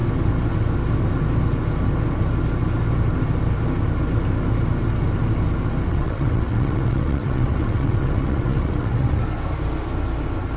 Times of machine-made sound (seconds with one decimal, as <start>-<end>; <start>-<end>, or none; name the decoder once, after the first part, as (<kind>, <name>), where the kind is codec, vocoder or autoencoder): 5.9-9.2 (vocoder, WaveNeXt)